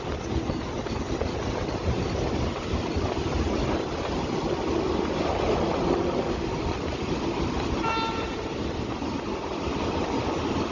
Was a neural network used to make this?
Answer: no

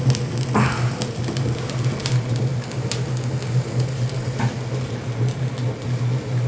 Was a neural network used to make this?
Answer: no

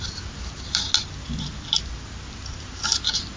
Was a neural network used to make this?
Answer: no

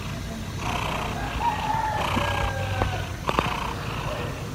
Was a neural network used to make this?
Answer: no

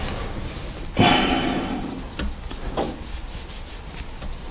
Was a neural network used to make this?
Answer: no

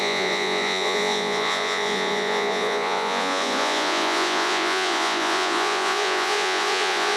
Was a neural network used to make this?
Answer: yes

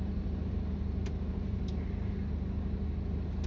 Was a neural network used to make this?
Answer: no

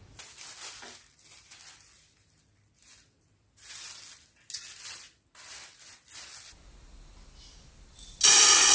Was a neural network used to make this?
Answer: no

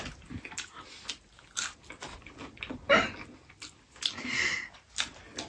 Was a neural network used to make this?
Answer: no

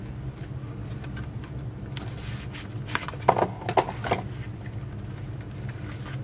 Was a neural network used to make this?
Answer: no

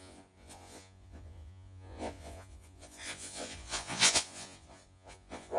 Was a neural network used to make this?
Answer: yes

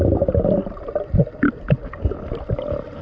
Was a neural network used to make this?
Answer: no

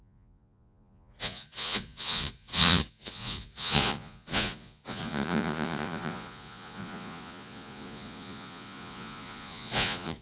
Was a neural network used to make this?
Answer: yes